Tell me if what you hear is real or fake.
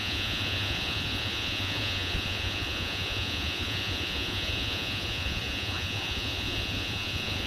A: fake